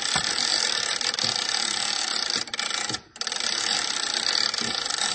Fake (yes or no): no